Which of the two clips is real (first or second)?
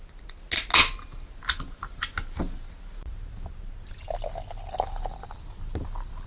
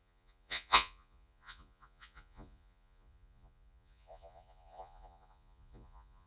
first